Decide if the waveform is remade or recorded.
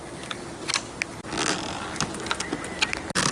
recorded